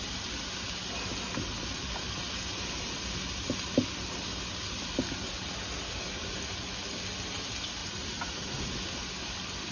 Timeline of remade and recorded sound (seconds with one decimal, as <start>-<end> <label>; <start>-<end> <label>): 0.0-7.8 recorded; 7.8-8.7 remade; 8.7-9.7 recorded